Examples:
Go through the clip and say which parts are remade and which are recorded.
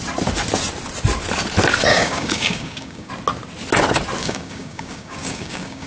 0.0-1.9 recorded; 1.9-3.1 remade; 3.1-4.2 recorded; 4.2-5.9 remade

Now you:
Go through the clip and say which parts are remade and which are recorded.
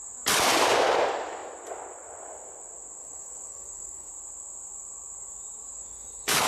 0.0-3.0 recorded; 3.0-4.1 remade; 4.1-5.8 recorded; 5.8-6.5 remade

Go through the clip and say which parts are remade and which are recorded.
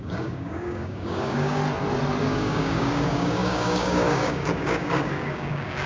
0.0-1.6 remade; 1.6-2.2 recorded; 2.2-5.9 remade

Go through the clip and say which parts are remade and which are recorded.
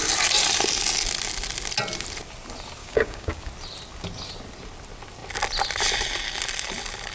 0.0-2.8 recorded; 2.8-3.5 remade; 3.5-7.1 recorded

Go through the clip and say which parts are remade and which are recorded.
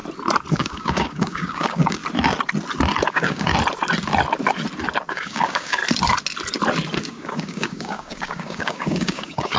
0.0-0.5 recorded; 0.5-2.0 remade; 2.0-3.1 recorded; 3.1-3.5 remade; 3.5-5.1 recorded; 5.1-5.8 remade; 5.8-7.0 recorded; 7.0-9.6 remade